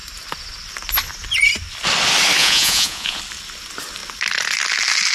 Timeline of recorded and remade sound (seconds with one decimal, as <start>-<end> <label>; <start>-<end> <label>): 0.0-2.4 recorded; 2.4-3.2 remade; 3.2-5.1 recorded